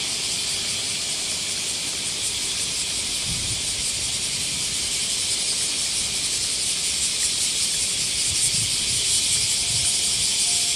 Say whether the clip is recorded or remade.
recorded